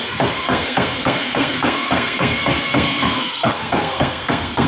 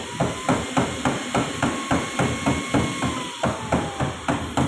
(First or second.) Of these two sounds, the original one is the second